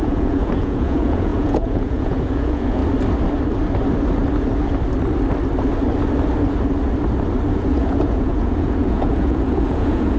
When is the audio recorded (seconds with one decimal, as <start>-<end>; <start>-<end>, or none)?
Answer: 2.8-7.5

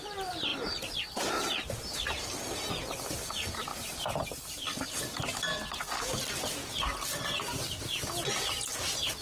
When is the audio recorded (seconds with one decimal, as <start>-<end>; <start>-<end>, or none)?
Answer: 0.5-1.0; 3.7-4.2; 6.6-9.2

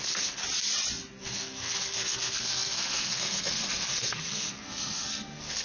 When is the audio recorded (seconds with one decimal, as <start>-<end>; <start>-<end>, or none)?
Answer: 0.4-1.2